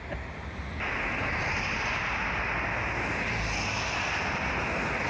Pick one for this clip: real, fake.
real